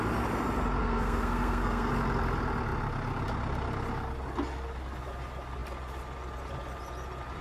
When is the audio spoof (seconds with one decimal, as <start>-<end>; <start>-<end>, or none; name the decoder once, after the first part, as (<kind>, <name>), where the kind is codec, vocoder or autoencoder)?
0.8-1.9 (codec, SNAC)

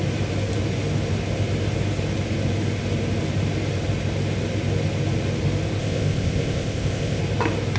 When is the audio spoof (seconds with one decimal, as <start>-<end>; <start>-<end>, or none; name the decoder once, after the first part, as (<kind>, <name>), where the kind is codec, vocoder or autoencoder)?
5.8-7.2 (codec, ZipCodec)

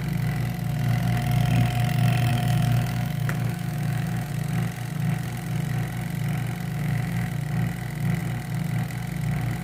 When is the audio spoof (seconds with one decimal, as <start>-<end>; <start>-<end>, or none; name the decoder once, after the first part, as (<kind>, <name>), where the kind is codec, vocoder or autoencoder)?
2.3-4.3 (autoencoder, DAC-VAE); 6.7-7.3

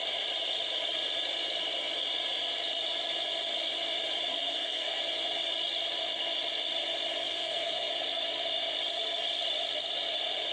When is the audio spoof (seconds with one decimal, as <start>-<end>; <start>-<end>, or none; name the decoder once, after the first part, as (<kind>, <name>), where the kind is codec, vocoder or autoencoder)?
4.3-5.0 (codec, SNAC); 7.3-7.9

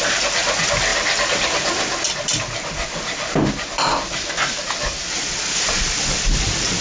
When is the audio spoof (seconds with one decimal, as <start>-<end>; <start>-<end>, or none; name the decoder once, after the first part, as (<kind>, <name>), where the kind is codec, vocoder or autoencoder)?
none